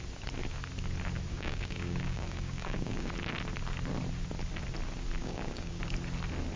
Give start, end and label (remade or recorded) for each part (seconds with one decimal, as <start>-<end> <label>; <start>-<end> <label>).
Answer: 0.0-1.3 recorded; 1.3-3.1 remade; 3.1-5.2 recorded; 5.2-5.8 remade; 5.8-6.6 recorded